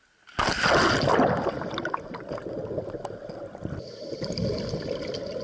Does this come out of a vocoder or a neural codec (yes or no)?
no